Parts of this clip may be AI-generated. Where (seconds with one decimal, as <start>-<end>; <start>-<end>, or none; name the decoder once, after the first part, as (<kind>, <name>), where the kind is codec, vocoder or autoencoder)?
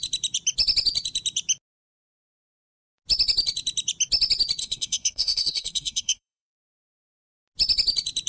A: 4.6-6.7 (codec, SNAC)